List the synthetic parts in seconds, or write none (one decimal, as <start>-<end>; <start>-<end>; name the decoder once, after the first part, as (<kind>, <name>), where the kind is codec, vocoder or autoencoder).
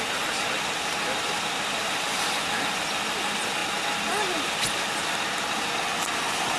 none